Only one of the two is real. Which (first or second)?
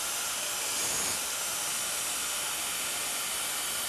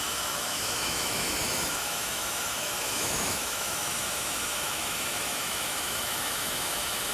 first